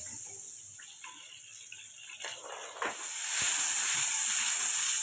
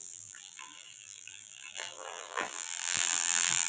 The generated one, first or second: second